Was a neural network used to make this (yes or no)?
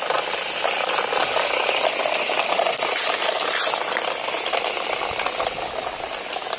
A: no